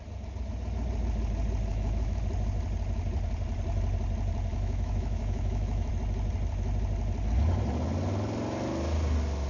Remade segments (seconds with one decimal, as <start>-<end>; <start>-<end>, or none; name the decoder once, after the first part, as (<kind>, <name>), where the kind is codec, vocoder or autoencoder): 1.7-2.2 (autoencoder, DAC-VAE); 4.5-5.9